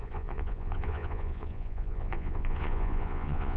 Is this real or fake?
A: fake